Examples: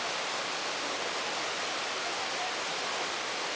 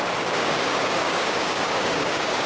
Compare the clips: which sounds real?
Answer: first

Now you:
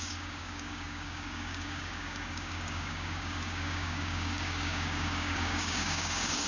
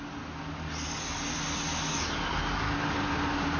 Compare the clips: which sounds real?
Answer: second